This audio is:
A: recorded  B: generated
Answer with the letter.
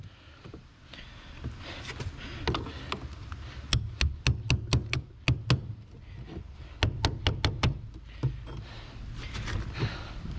A